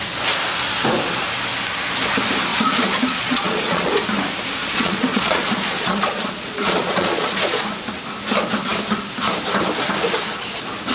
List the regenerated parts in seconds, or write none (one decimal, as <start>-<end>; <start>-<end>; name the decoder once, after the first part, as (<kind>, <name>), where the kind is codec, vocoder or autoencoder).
2.5-3.9 (vocoder, Vocos); 4.6-7.6